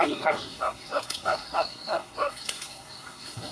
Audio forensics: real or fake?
fake